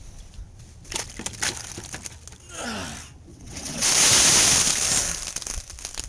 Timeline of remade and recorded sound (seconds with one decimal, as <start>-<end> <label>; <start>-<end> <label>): 0.0-3.3 recorded; 3.3-3.9 remade; 3.9-6.1 recorded